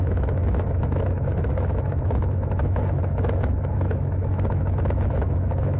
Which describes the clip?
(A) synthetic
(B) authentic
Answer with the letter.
A